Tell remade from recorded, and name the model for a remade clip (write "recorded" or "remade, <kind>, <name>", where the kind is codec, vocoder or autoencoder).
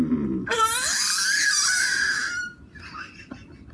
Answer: recorded